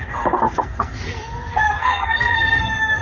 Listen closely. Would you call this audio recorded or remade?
remade